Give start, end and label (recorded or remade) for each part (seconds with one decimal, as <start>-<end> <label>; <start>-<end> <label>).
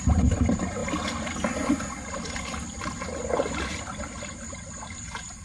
0.0-5.4 recorded